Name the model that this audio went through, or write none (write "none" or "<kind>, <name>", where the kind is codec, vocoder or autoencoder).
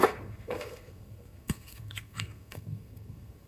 codec, SNAC